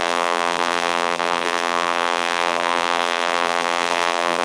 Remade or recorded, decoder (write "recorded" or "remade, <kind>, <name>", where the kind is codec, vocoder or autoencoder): remade, vocoder, BigVGAN v2